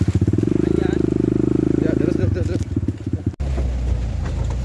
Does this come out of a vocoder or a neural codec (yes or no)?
no